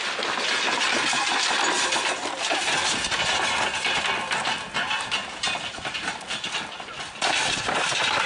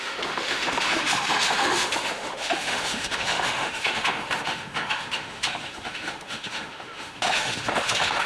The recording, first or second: first